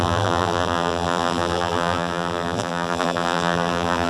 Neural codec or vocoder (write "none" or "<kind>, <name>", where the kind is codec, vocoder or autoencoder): vocoder, BigVGAN v2